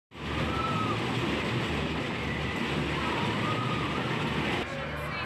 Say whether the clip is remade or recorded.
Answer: recorded